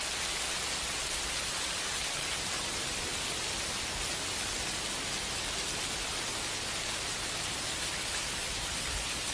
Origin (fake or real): real